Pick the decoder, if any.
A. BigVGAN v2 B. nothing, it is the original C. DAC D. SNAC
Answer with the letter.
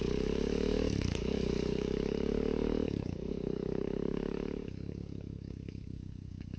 C